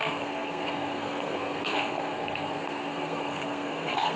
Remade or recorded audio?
remade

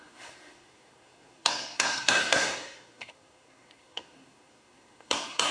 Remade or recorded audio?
remade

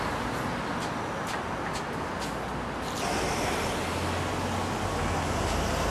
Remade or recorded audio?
recorded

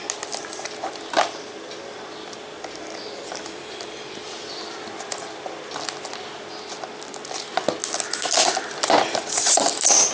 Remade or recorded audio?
recorded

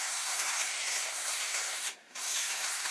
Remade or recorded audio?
remade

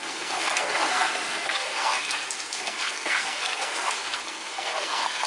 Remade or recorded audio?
remade